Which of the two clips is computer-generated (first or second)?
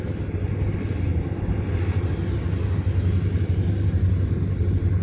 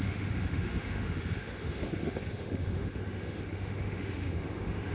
second